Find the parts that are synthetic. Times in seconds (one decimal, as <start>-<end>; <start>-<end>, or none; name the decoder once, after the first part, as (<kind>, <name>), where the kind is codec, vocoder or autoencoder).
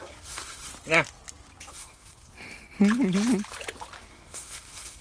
0.0-0.7 (codec, SNAC); 1.7-2.3; 4.1-5.0